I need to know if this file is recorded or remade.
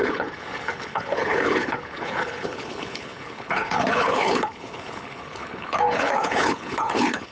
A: remade